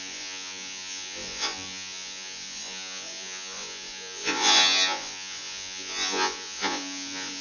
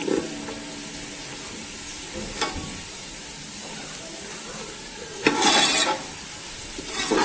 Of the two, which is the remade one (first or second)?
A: first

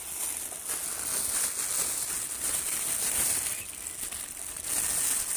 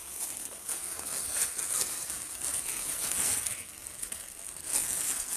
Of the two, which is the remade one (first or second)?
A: second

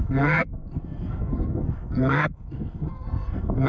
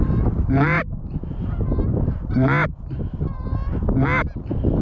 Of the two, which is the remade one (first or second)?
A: first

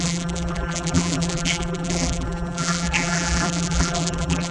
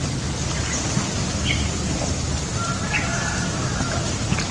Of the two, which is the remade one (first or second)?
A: first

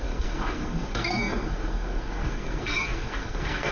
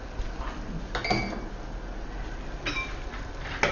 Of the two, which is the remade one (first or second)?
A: first